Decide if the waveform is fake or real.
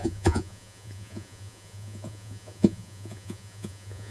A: fake